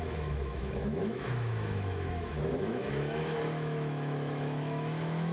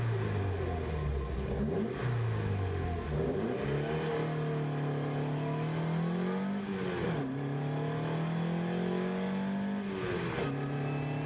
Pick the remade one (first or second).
first